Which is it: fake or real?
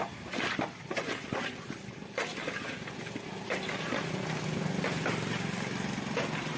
real